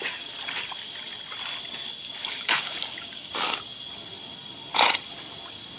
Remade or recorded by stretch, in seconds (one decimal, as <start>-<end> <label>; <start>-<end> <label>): 0.0-2.2 recorded; 2.2-3.3 remade; 3.3-5.8 recorded